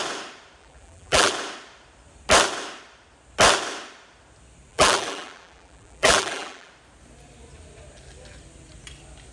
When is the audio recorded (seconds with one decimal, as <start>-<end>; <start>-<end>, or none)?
0.0-0.6; 1.3-4.7; 6.7-9.3